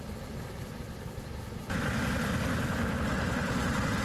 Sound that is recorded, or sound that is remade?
recorded